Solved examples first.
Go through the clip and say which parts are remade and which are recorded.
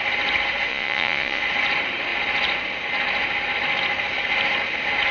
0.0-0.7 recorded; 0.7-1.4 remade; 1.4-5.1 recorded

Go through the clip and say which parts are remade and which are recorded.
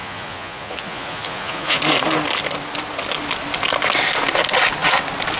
0.0-1.8 remade; 1.8-5.4 recorded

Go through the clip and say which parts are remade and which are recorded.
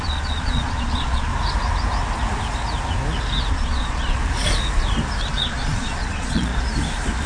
0.0-1.3 remade; 1.3-3.5 recorded; 3.5-4.2 remade; 4.2-5.3 recorded; 5.3-6.5 remade; 6.5-7.3 recorded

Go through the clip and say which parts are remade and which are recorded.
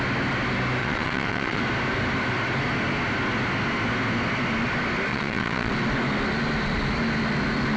0.0-0.8 recorded; 0.8-1.6 remade; 1.6-5.1 recorded; 5.1-5.7 remade; 5.7-7.8 recorded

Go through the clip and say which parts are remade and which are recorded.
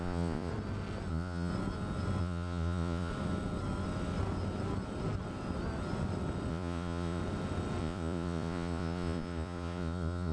0.0-0.5 remade; 0.5-1.1 recorded; 1.1-1.5 remade; 1.5-2.2 recorded; 2.2-3.1 remade; 3.1-6.5 recorded; 6.5-7.2 remade; 7.2-7.8 recorded; 7.8-10.3 remade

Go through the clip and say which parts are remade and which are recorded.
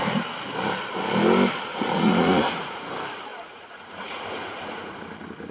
0.0-1.7 recorded; 1.7-2.9 remade; 2.9-3.3 recorded; 3.3-5.0 remade; 5.0-5.5 recorded